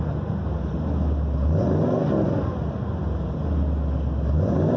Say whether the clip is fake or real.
real